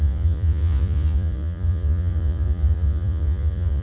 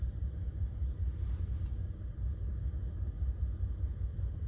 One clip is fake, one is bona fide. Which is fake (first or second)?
first